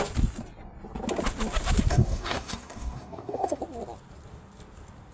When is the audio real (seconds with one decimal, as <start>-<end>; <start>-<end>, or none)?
0.0-1.9; 3.6-5.1